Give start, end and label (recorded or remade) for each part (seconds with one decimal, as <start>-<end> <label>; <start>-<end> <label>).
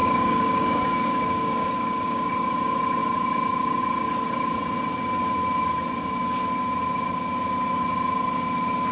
0.0-2.3 remade; 2.3-8.9 recorded